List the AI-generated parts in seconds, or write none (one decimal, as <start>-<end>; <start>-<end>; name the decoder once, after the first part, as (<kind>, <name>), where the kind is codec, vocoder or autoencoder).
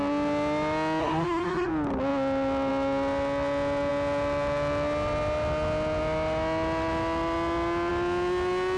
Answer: 1.0-1.7 (codec, SNAC)